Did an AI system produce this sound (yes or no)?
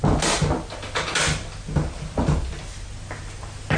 no